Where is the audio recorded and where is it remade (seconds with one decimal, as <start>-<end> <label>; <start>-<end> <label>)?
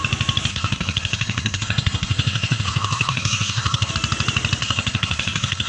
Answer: 0.0-0.5 recorded; 0.5-3.9 remade; 3.9-4.6 recorded; 4.6-5.7 remade